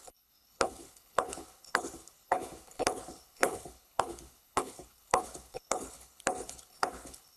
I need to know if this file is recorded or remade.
remade